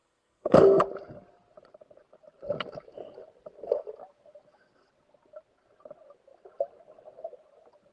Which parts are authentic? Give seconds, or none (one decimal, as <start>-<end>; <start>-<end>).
0.8-7.9